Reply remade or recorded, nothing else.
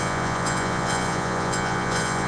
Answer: remade